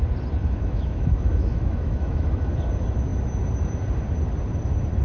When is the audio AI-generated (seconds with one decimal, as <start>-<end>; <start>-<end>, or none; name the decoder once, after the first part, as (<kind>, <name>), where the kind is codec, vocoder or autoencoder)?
0.4-2.5 (autoencoder, DAC-VAE)